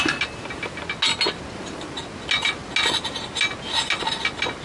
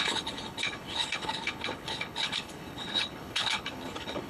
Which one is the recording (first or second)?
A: first